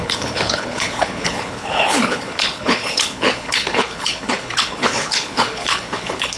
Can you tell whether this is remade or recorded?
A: remade